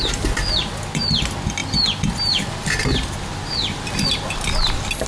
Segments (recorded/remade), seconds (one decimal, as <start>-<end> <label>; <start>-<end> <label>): 0.0-5.1 recorded